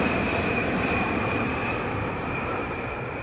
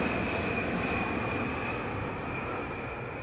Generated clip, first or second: first